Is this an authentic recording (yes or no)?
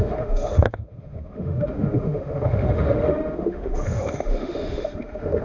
no